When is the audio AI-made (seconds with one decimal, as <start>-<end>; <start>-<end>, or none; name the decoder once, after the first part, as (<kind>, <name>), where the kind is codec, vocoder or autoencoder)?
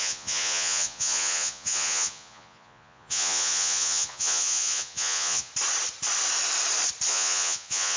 0.0-5.5 (vocoder, Vocos); 7.1-8.0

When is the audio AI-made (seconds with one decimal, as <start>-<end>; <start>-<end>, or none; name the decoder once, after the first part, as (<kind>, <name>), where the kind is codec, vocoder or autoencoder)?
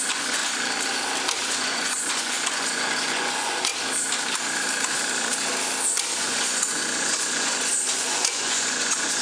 0.0-0.4 (vocoder, Vocos); 1.5-3.7; 6.2-9.2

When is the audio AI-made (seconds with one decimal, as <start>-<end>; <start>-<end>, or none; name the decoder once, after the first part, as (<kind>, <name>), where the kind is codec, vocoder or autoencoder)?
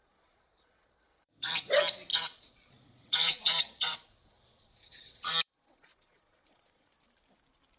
0.0-1.6 (vocoder, Vocos); 2.1-6.8